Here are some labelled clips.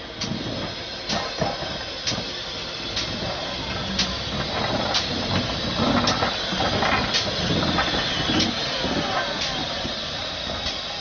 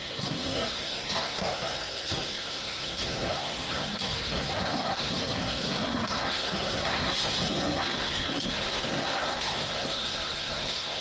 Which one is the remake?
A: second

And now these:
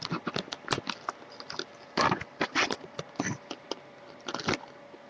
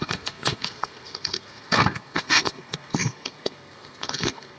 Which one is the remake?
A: second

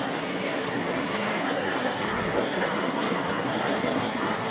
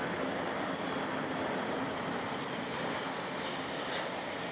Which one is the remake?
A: first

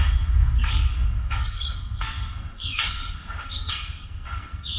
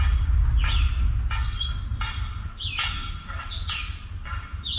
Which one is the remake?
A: first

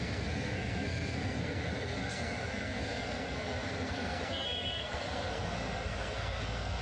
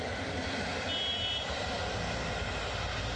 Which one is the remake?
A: first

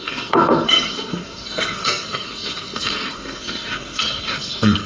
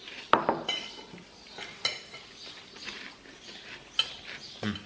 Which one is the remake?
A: first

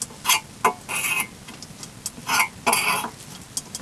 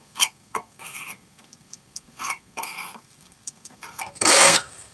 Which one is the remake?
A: second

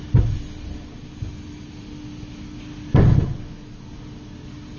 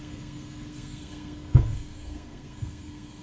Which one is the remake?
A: second